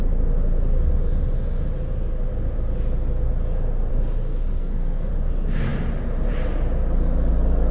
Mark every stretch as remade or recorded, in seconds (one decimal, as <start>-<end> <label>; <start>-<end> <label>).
0.0-3.9 recorded; 3.9-5.1 remade; 5.1-7.7 recorded